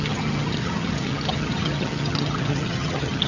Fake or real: fake